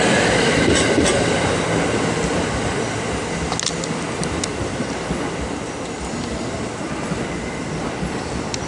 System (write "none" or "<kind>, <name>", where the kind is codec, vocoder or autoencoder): none